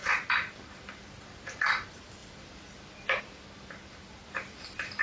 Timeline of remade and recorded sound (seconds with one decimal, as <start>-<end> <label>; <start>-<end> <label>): 0.0-5.0 remade